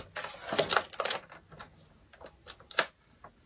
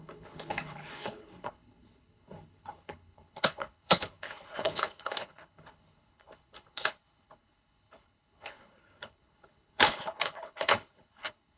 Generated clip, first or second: second